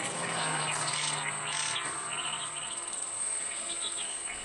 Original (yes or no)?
no